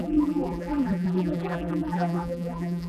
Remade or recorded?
remade